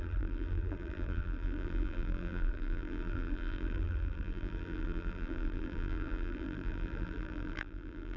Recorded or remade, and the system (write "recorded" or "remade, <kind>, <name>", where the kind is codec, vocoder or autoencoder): remade, vocoder, BigVGAN v2